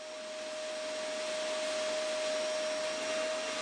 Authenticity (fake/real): real